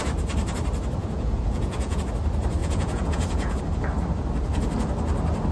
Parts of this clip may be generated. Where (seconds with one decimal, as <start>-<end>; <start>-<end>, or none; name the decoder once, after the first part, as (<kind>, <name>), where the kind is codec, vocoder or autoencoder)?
1.0-2.0 (vocoder, Vocos); 2.6-3.6

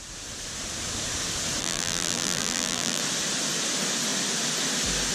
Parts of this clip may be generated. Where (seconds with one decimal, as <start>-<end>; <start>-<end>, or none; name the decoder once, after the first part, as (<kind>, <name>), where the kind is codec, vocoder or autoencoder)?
1.6-3.0 (vocoder, BigVGAN v2)